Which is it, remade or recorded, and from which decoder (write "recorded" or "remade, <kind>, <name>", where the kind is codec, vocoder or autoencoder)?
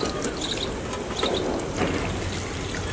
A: recorded